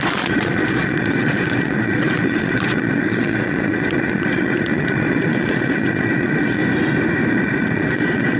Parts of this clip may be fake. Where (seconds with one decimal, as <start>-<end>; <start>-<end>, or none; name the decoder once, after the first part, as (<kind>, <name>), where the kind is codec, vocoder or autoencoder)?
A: 0.0-6.6 (vocoder, Vocos); 7.3-8.4